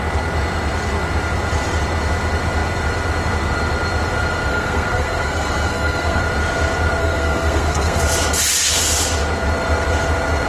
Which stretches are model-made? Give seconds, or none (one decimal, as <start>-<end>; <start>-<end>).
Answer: 4.5-6.2; 7.0-8.0